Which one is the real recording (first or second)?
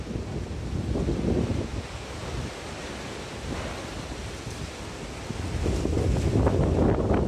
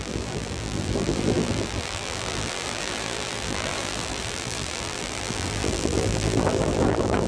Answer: first